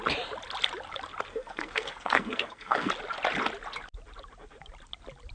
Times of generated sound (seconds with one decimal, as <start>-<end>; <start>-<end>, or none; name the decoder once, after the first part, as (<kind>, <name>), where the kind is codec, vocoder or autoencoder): 1.3-2.9 (codec, SNAC)